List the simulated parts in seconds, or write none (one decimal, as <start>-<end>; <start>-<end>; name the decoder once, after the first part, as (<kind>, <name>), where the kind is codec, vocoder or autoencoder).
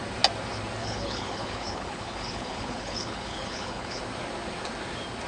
0.8-4.0 (codec, HILCodec)